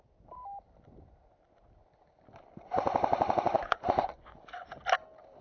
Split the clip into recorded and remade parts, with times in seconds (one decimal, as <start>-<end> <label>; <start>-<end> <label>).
0.0-3.1 recorded; 3.1-4.7 remade; 4.7-5.4 recorded

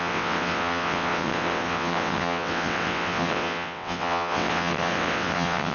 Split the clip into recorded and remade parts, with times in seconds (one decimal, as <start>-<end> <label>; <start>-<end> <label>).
0.0-5.7 remade